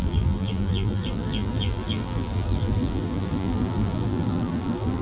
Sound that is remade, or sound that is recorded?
remade